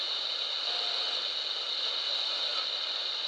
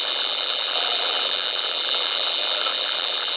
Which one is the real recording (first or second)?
first